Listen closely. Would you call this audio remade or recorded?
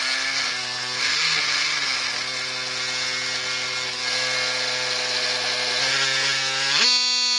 recorded